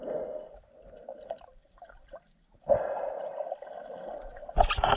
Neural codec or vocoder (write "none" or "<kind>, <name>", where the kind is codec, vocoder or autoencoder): none